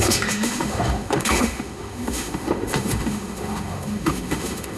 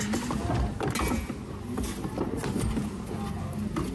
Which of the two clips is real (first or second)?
second